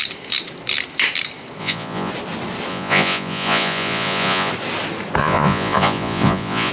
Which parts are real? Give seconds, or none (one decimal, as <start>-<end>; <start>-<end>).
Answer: 0.0-1.6; 2.1-2.7; 4.5-5.2